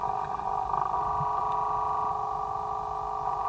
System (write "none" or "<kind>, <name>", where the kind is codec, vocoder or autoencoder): none